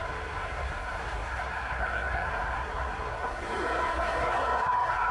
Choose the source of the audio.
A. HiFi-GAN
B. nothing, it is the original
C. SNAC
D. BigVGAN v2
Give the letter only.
C